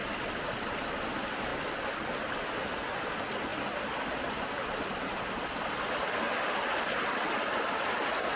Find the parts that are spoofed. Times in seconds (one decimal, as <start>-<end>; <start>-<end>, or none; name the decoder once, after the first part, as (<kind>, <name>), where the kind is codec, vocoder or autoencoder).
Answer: 0.0-0.5 (vocoder, BigVGAN v2)